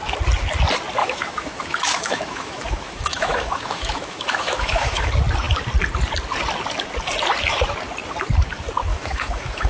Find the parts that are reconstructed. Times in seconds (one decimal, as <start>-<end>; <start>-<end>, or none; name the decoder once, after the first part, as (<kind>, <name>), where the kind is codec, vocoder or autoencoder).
1.0-5.1 (autoencoder, DAC-VAE); 8.9-9.7